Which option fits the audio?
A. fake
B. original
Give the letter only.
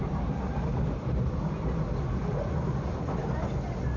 B